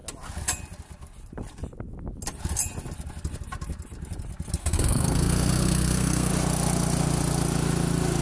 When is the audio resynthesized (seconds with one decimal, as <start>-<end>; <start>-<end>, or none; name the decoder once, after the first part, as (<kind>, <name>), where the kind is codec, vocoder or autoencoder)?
4.6-6.3 (codec, SNAC)